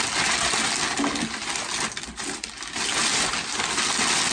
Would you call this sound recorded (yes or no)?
yes